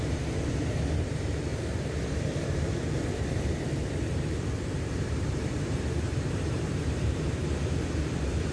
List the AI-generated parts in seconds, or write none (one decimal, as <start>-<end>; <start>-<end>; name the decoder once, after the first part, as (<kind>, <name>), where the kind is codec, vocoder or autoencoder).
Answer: 0.0-8.5 (vocoder, BigVGAN v2)